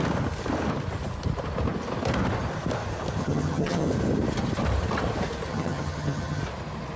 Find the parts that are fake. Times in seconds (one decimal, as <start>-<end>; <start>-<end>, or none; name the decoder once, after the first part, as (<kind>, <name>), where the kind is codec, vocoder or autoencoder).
3.2-3.9 (vocoder, HiFi-GAN); 5.5-6.4